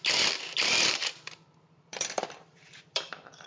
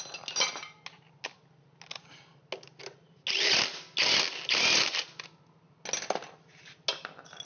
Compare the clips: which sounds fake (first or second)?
first